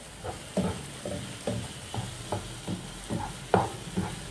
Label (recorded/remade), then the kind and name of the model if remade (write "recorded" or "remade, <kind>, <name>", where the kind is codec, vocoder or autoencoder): recorded